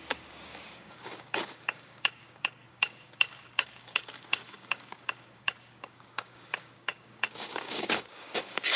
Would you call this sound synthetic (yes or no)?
yes